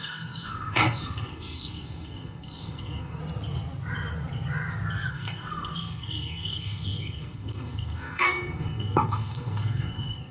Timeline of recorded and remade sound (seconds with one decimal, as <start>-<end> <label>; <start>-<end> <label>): 0.0-3.2 remade; 3.2-5.1 recorded; 5.1-10.3 remade